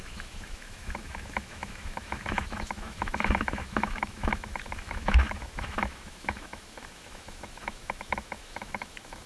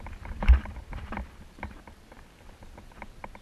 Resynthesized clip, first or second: first